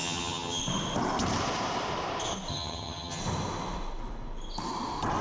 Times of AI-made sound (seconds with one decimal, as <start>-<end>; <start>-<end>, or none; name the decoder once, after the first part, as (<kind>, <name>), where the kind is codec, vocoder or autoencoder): 0.0-0.6 (vocoder, HiFi-GAN); 2.5-3.2